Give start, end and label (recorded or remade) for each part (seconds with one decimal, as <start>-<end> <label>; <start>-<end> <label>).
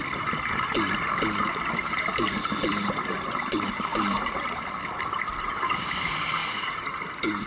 0.0-3.9 remade; 3.9-5.2 recorded; 5.2-6.4 remade; 6.4-7.1 recorded; 7.1-7.5 remade